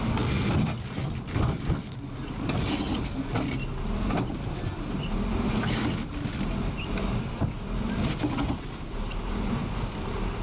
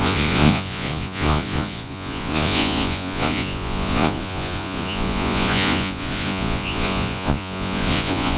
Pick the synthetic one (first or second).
second